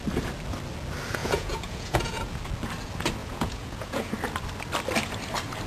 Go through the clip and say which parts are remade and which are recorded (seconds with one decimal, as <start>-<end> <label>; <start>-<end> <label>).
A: 0.0-1.2 recorded; 1.2-2.3 remade; 2.3-3.2 recorded; 3.2-4.1 remade; 4.1-5.7 recorded